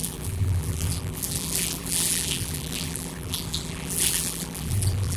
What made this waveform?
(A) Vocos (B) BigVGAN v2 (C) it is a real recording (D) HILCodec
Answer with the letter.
B